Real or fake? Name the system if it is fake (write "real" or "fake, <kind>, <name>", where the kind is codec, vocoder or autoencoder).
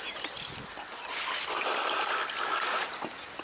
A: real